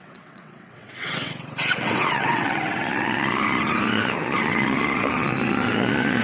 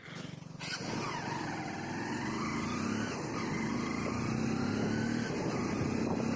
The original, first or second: second